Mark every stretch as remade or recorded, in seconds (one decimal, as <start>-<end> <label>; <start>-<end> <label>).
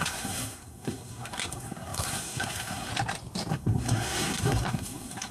0.0-2.9 remade; 2.9-3.5 recorded; 3.5-5.3 remade